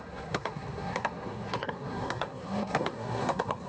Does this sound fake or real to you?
fake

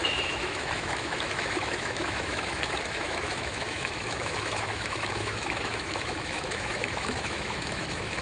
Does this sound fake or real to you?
fake